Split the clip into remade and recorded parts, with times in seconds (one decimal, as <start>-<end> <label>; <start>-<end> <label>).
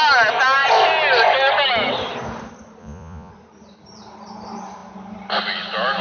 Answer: 0.0-2.8 recorded; 2.8-3.3 remade; 3.3-6.0 recorded